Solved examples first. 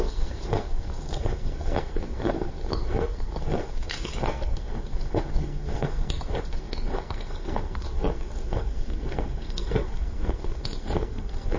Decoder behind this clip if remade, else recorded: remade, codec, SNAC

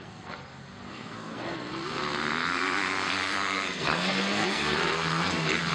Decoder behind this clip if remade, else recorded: remade, codec, SNAC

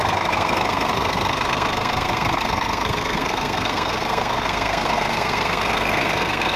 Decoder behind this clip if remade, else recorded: remade, codec, SNAC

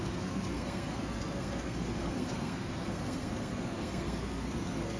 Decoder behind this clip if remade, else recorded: remade, codec, SNAC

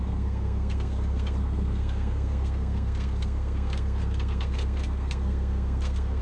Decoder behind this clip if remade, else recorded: remade, codec, SNAC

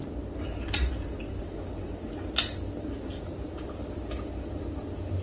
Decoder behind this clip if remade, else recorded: recorded